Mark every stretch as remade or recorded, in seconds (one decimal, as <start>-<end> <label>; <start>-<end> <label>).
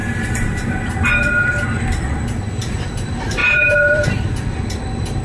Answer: 0.0-0.9 remade; 0.9-3.4 recorded; 3.4-4.3 remade; 4.3-5.2 recorded